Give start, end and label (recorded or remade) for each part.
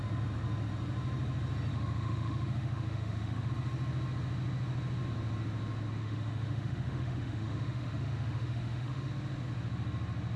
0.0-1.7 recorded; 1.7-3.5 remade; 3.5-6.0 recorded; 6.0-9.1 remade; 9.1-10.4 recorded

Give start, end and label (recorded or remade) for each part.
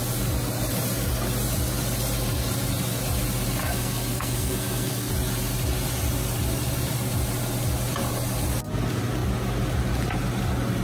0.0-3.6 recorded; 3.6-5.1 remade; 5.1-10.8 recorded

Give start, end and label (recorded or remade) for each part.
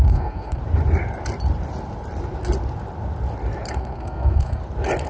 0.0-0.6 remade; 0.6-3.7 recorded; 3.7-4.6 remade; 4.6-5.1 recorded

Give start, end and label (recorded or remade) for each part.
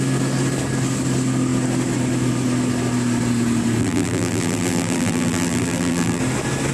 0.0-3.8 recorded; 3.8-6.2 remade; 6.2-6.7 recorded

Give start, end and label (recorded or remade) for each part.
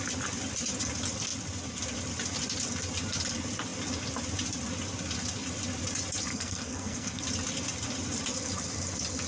0.0-6.3 recorded; 6.3-7.2 remade; 7.2-9.3 recorded